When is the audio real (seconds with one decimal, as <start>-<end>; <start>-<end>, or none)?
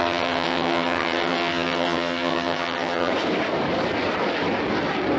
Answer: 3.1-5.2